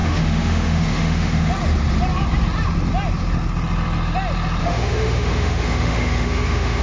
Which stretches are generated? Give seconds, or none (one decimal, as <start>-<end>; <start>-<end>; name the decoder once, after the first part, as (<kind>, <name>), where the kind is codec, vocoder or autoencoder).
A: 0.0-1.5 (autoencoder, DAC-VAE); 4.6-6.8